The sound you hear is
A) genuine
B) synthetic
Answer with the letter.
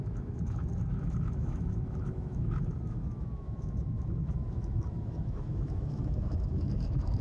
B